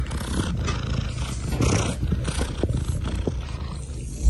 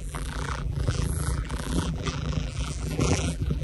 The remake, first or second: second